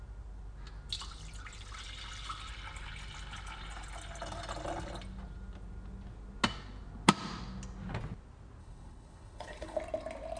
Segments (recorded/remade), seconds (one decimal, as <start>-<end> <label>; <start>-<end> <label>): 0.0-8.6 recorded; 8.6-9.8 remade; 9.8-10.4 recorded